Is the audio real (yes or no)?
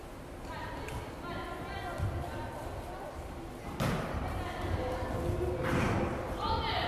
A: yes